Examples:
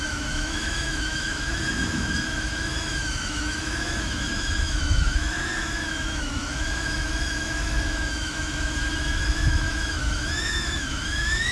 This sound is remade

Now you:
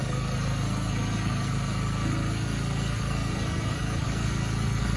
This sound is remade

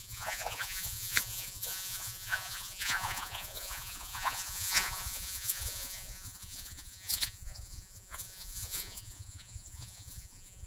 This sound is remade